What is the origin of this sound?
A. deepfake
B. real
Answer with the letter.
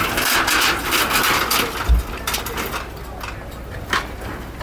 B